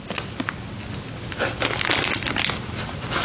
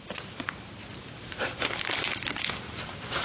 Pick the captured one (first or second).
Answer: first